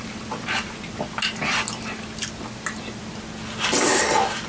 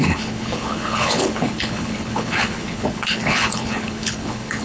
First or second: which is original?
first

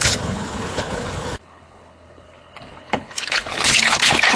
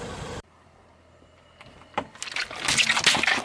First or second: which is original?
second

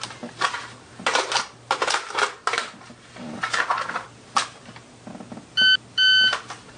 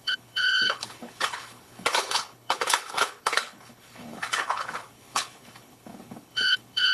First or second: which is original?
first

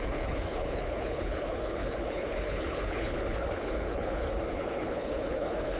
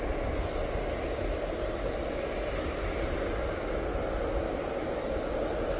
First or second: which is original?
second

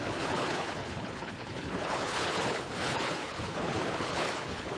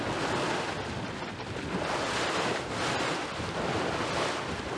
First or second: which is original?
second